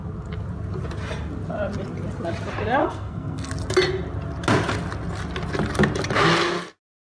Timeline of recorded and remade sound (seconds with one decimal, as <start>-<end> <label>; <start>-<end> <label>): 0.0-2.8 recorded; 2.8-3.5 remade; 3.5-7.2 recorded